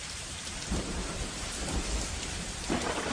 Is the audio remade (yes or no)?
yes